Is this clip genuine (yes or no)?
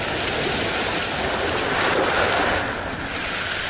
yes